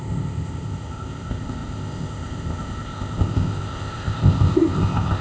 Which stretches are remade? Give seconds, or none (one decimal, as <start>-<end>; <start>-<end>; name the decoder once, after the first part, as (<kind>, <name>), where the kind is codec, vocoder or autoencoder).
0.0-5.2 (codec, ZipCodec)